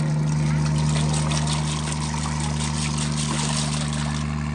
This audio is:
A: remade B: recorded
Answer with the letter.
B